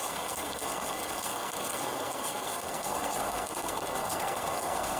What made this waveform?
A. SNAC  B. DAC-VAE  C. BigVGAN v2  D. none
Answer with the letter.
A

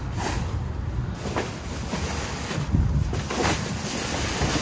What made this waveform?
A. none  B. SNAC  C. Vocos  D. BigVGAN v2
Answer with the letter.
A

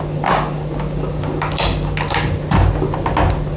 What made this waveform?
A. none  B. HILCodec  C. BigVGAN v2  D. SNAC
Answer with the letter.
A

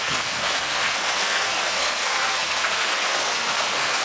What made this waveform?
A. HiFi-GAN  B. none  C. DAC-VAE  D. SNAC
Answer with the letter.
D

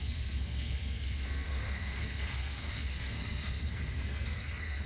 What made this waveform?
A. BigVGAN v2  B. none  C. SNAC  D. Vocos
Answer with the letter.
C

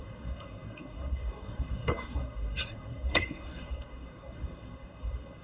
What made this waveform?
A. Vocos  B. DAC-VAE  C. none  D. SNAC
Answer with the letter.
D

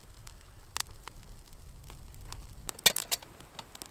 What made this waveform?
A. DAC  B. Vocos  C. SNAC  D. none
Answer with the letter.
D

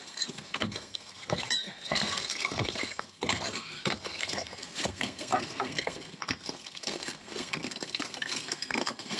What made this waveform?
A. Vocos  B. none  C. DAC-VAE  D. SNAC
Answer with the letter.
D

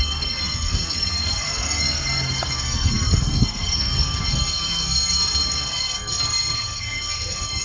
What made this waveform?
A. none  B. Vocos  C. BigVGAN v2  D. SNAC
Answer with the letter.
D